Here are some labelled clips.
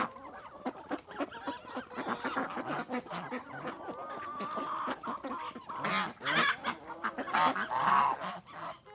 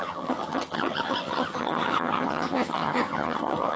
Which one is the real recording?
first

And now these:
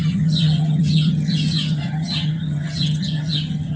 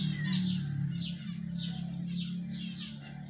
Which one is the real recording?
second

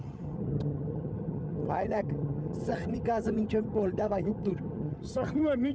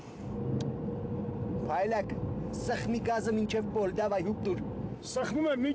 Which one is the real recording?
second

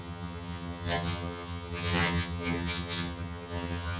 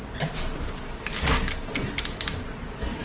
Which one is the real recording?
second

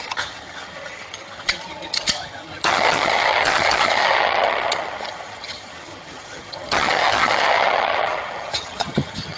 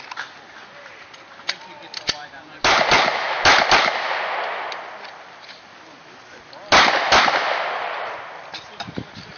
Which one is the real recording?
second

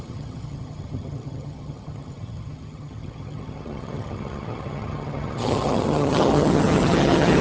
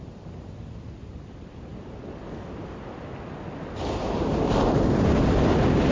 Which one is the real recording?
second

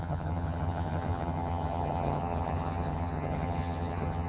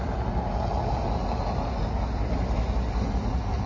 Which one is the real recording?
second